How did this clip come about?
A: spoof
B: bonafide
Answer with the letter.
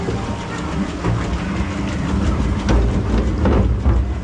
B